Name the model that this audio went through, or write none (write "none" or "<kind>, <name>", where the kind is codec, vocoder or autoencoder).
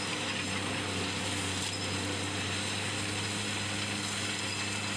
none